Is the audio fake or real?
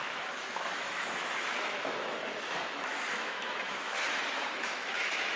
fake